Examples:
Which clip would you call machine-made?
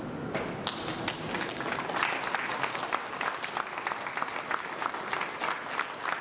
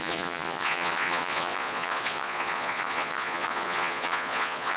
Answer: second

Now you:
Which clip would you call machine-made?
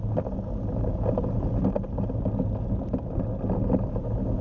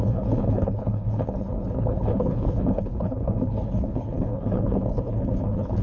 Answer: second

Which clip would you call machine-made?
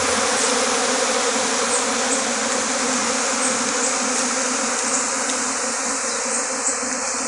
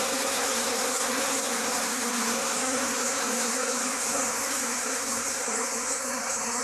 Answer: second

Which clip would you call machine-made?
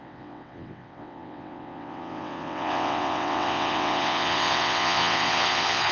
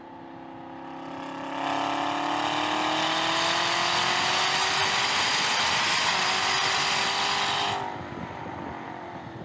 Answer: first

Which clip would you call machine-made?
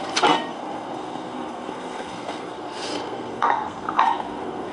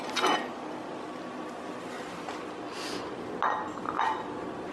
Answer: first